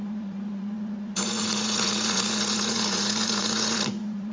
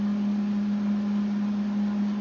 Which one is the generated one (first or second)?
first